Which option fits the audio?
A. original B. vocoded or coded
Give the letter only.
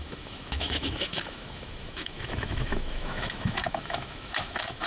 B